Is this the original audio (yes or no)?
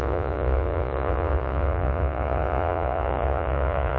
no